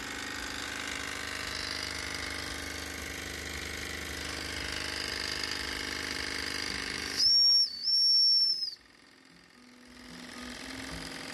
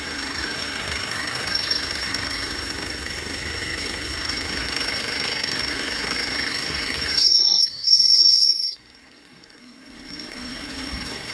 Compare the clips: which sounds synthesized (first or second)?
second